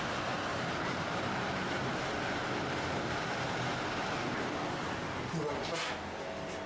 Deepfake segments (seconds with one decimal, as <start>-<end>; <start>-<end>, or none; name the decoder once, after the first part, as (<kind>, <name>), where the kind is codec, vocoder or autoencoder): 0.5-2.4 (vocoder, BigVGAN v2)